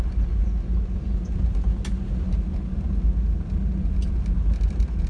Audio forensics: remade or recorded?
recorded